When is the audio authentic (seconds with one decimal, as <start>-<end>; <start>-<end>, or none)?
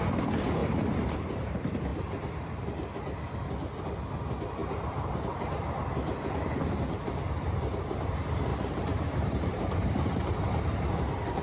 0.0-0.6; 1.5-4.6; 5.2-8.5